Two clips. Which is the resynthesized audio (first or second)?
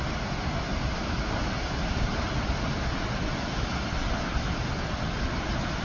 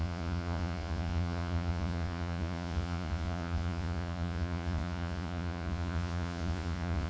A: second